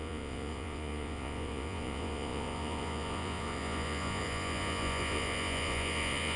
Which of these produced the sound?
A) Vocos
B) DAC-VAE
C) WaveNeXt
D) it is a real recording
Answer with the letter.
A